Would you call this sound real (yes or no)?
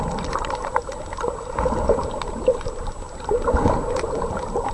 yes